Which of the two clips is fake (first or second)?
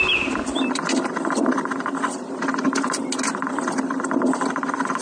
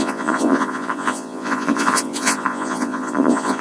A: second